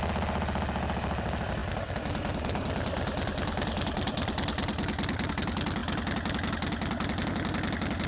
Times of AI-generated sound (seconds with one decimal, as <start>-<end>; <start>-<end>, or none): none